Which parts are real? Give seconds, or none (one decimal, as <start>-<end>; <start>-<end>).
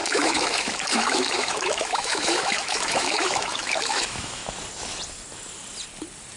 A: 4.4-6.4